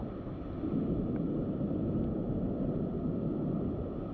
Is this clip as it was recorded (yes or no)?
yes